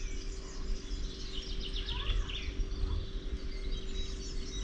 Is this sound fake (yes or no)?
no